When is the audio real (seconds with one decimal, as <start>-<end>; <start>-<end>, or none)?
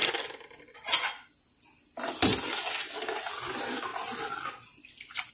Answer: 0.0-5.3